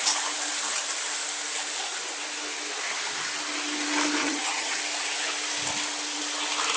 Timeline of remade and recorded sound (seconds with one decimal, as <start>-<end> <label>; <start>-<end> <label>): 0.0-4.2 recorded; 4.2-4.8 remade; 4.8-6.8 recorded